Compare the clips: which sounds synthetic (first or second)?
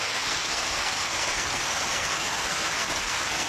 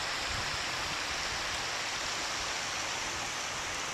first